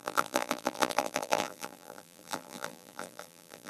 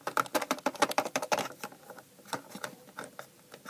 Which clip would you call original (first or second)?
second